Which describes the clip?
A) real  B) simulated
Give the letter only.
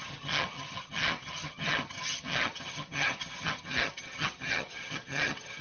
B